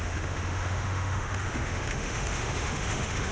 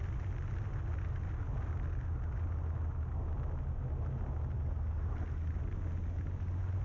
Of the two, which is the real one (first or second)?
second